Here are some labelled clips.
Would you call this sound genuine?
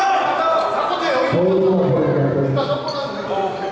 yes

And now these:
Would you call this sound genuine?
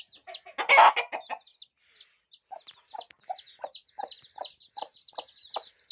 yes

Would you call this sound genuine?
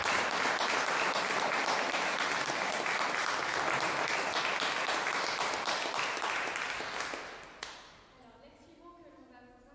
yes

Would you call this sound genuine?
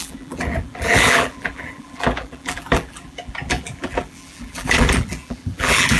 no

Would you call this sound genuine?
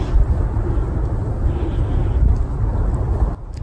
yes